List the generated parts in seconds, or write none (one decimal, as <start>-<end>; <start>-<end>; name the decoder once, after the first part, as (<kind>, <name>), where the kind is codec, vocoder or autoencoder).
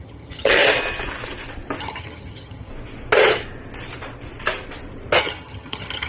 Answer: 0.0-0.6 (vocoder, HiFi-GAN); 1.8-2.7; 5.2-6.1